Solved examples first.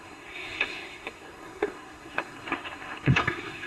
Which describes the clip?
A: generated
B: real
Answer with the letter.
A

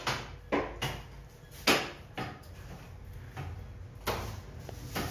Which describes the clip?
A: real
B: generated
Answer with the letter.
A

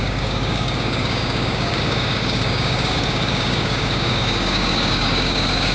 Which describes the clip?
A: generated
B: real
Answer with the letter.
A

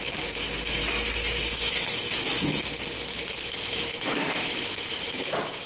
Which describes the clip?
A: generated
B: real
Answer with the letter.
A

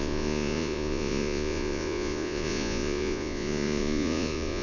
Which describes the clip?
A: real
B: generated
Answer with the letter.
B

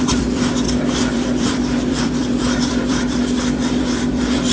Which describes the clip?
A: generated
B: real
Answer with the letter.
A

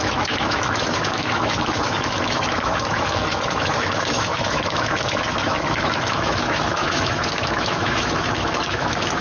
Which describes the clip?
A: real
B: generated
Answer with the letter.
B